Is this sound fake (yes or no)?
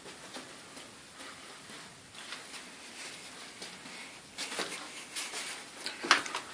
no